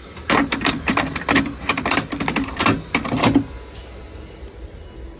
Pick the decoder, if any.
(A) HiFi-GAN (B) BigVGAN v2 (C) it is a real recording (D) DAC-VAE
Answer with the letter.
C